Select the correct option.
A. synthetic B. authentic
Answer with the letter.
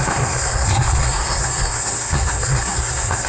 A